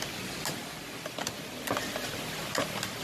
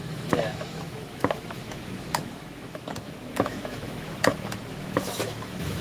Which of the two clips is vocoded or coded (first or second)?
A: second